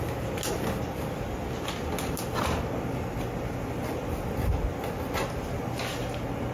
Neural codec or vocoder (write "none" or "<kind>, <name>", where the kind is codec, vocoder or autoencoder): none